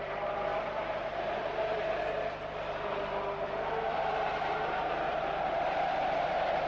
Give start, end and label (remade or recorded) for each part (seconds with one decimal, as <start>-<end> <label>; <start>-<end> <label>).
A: 0.0-6.7 remade